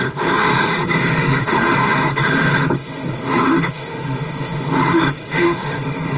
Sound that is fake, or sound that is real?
fake